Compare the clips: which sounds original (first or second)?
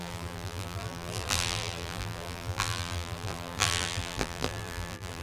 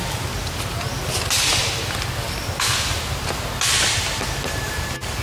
second